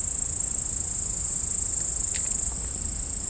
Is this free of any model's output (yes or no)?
yes